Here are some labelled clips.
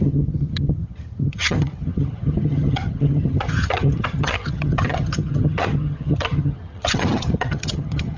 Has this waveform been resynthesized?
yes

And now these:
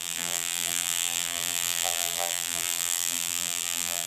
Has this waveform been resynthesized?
yes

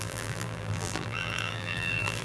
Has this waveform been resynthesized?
yes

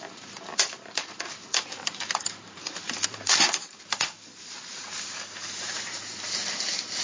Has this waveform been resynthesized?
yes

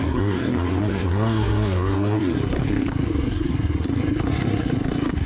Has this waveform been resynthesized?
yes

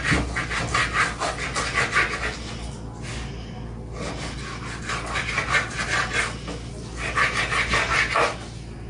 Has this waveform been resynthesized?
no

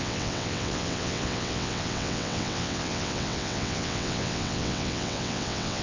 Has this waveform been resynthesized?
yes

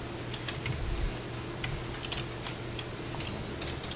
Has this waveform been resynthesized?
no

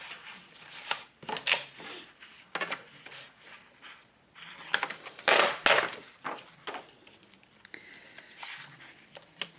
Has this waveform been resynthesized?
no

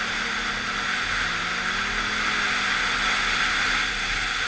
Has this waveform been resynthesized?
no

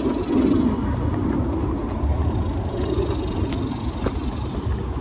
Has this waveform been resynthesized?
no